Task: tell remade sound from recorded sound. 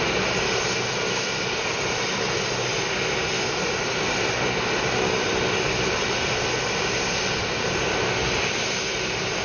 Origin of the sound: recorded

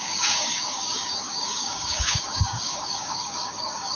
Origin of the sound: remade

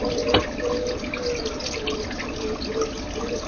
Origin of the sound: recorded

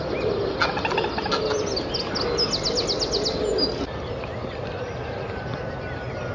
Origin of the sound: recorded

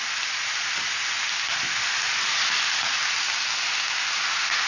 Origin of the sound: recorded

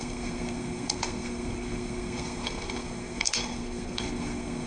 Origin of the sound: remade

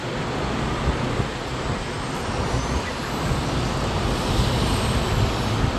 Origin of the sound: recorded